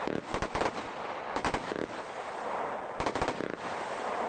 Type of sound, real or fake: real